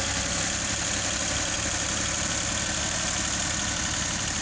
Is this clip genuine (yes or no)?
yes